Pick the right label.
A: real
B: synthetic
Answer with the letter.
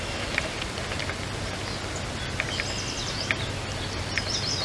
A